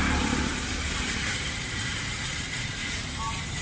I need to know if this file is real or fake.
fake